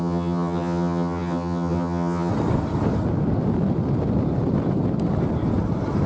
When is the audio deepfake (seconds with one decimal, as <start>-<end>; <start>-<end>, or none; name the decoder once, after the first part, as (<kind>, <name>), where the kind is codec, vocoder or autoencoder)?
0.0-2.3 (vocoder, HiFi-GAN)